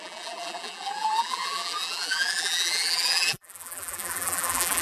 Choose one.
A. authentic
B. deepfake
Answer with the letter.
B